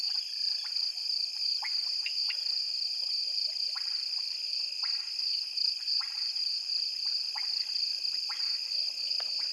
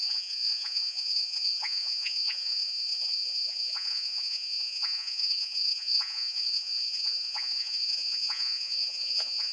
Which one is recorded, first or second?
first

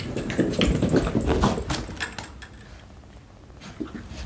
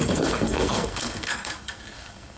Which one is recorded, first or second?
first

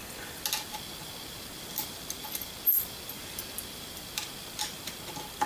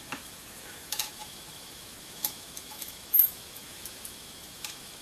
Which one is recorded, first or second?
first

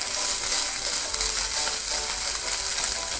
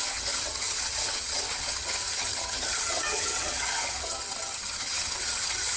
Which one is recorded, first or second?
first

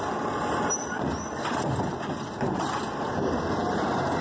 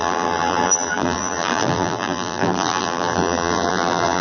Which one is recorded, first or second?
first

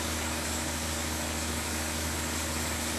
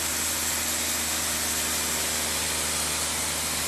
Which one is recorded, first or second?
second